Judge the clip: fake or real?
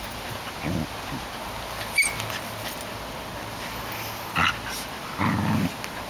real